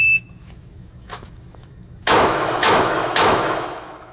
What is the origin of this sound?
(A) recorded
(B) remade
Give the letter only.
B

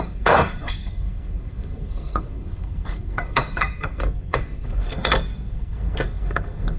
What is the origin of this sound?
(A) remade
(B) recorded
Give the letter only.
A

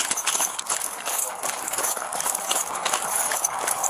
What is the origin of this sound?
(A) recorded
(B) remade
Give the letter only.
B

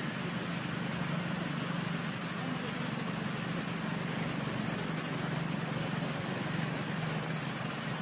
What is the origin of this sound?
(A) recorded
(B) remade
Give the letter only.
A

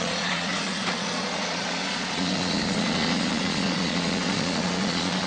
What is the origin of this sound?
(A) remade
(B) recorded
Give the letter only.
A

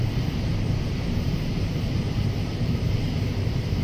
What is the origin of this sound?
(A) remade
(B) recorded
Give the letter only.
A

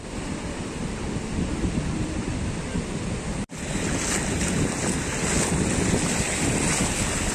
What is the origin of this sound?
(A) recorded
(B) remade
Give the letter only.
A